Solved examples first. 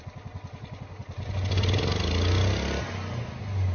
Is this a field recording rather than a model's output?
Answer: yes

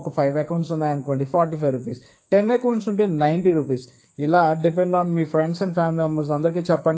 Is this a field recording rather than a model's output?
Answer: no